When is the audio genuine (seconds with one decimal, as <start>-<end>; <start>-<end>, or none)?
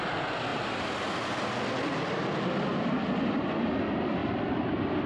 0.0-0.5; 2.9-4.2